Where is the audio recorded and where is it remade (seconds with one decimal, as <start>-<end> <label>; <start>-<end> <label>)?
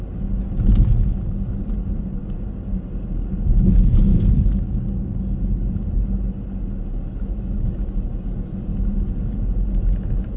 0.0-4.1 recorded; 4.1-5.2 remade; 5.2-10.4 recorded